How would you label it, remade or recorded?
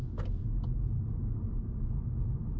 recorded